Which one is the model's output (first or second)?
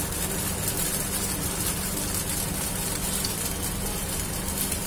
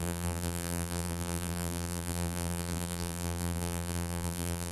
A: second